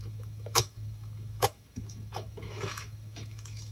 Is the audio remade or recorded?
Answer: remade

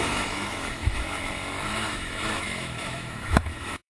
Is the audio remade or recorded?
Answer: remade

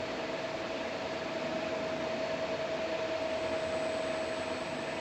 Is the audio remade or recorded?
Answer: recorded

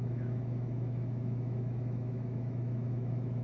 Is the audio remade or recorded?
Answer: remade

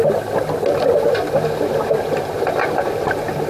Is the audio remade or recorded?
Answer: recorded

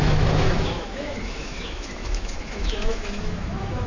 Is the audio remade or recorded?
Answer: remade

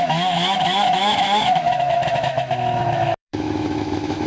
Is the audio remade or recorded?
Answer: remade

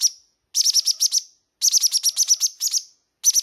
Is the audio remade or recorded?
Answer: recorded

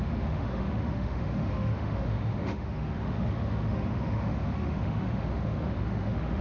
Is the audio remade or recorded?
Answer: remade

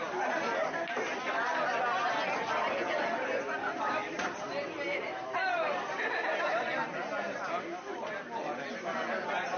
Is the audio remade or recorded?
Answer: recorded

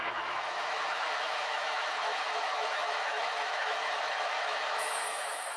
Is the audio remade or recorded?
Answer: remade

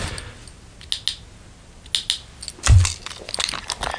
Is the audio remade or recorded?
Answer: recorded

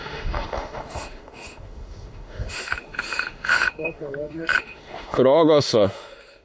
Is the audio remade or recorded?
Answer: remade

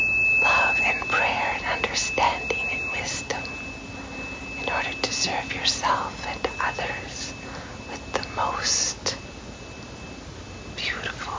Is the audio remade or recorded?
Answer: recorded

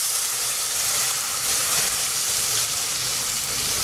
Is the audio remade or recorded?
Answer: recorded